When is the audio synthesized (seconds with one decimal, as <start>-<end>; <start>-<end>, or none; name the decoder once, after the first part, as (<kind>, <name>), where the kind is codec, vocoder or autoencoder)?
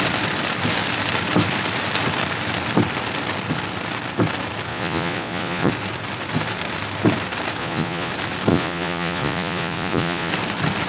4.7-5.7 (vocoder, Vocos); 7.6-8.1; 8.5-10.3